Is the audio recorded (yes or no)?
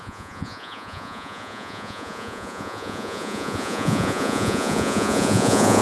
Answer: no